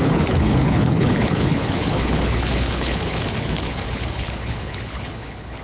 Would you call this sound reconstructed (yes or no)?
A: yes